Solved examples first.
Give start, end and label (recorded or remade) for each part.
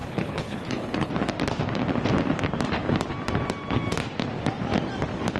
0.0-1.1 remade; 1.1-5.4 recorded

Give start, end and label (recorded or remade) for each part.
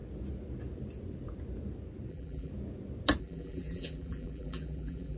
0.0-2.1 recorded; 2.1-2.5 remade; 2.5-3.2 recorded; 3.2-5.2 remade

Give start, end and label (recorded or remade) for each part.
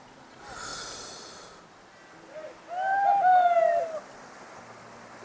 0.0-0.7 remade; 0.7-3.8 recorded; 3.8-5.2 remade